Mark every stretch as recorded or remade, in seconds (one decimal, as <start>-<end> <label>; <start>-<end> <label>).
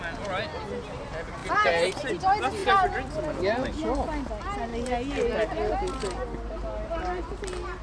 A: 0.0-7.8 recorded